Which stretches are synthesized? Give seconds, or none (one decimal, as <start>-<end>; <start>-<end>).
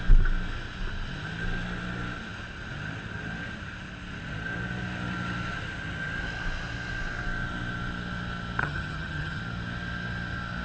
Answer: 8.6-9.4